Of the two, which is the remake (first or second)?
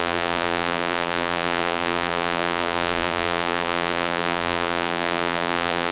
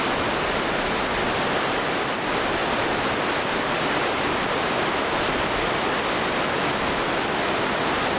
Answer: first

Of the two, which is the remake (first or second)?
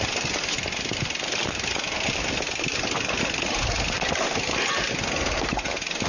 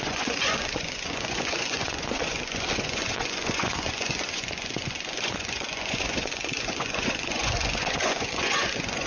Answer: second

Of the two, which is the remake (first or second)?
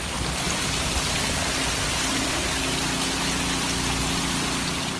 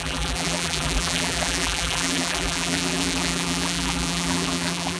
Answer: second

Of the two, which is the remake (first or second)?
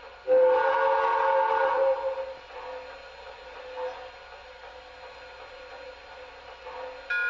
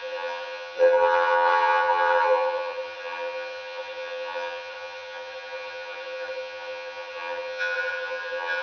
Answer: second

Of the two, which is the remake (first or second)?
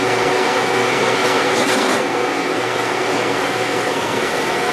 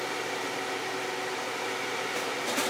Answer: first